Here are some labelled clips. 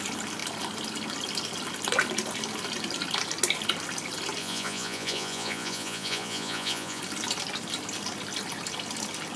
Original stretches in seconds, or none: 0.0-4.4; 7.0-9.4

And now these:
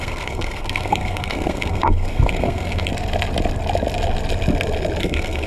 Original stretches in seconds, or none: 2.9-5.0

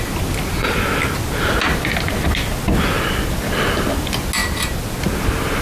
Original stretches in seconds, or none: 0.0-5.6